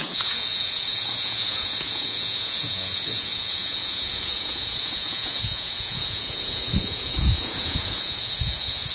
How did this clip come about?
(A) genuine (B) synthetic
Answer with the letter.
B